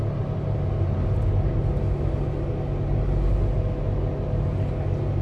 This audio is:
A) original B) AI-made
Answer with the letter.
A